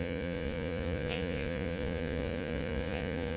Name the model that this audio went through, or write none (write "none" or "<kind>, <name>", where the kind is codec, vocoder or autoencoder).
vocoder, Vocos